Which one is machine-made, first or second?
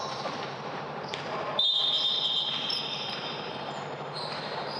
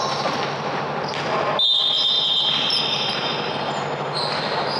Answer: first